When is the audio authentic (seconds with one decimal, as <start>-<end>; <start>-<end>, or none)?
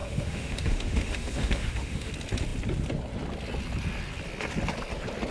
2.1-5.3